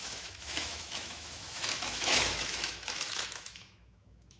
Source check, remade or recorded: remade